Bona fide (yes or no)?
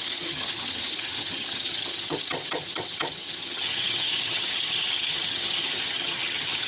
no